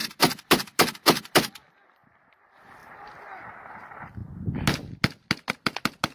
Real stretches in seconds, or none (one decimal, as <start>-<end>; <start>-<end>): 1.7-6.1

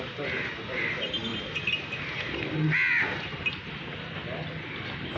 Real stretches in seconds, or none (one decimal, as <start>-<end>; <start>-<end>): 0.0-1.3; 3.5-5.2